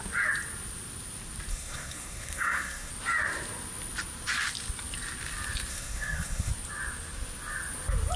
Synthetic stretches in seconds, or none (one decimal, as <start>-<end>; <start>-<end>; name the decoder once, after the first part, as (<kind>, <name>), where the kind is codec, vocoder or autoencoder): 1.5-2.9 (codec, SNAC); 5.7-6.5